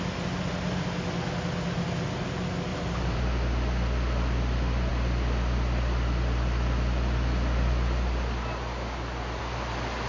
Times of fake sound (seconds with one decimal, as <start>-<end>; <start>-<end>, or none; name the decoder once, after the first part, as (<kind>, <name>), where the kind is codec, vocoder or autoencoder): 2.7-3.2 (vocoder, BigVGAN v2)